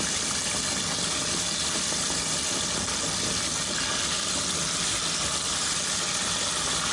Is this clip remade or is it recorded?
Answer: recorded